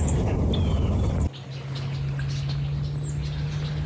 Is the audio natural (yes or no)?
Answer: yes